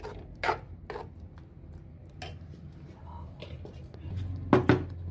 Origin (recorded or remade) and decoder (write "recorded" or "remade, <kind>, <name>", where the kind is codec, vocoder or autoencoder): recorded